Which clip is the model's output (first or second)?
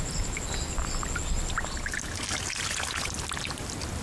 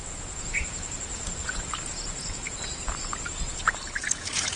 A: second